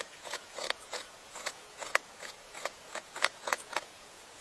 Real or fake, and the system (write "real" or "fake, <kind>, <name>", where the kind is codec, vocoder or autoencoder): fake, vocoder, Vocos